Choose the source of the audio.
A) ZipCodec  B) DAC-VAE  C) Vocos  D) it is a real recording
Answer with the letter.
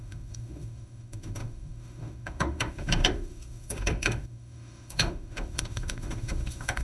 B